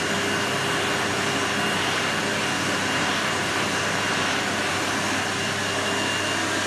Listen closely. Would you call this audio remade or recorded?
recorded